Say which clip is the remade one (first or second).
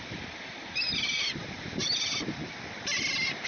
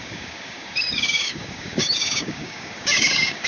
second